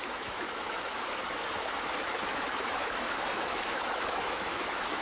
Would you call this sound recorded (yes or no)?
no